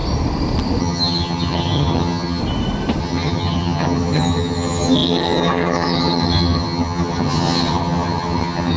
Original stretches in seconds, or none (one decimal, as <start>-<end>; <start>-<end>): 0.0-0.8; 2.4-3.0